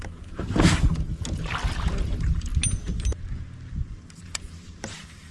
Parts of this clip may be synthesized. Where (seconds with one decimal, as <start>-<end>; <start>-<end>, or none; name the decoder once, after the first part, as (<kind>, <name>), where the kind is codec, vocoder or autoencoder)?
0.0-1.1 (vocoder, BigVGAN v2); 1.7-2.5; 4.2-5.3